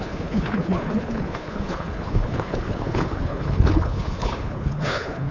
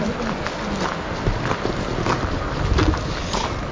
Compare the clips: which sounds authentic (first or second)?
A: second